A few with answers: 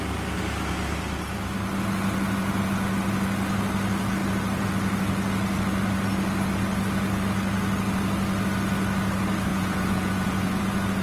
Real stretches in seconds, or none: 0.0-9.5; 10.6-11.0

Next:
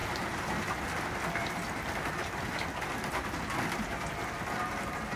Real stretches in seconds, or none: 0.0-5.2